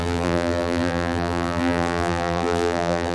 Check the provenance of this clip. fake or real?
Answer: fake